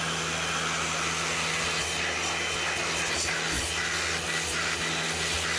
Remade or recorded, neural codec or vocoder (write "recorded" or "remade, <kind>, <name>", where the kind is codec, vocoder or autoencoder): recorded